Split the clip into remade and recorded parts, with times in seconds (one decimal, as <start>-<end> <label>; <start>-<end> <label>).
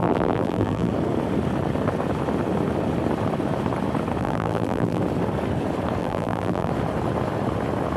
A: 0.0-0.9 remade; 0.9-4.2 recorded; 4.2-5.0 remade; 5.0-6.0 recorded; 6.0-6.7 remade; 6.7-8.0 recorded